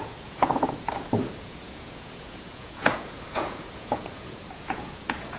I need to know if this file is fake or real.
fake